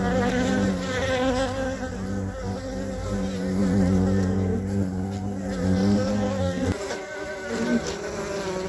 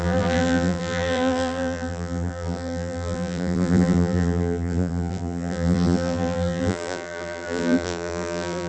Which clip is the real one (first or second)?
first